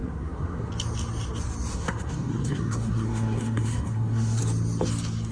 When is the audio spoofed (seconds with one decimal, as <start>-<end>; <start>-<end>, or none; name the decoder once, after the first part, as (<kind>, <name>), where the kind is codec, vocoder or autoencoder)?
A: 0.0-0.7 (codec, SNAC); 1.7-4.4